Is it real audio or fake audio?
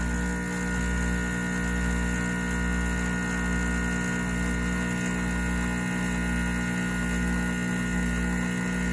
real